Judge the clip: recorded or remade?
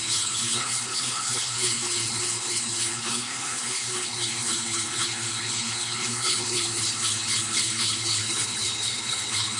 remade